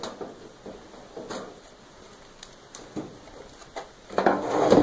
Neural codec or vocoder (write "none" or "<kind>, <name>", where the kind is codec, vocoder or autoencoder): none